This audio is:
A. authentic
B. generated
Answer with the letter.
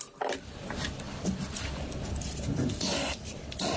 A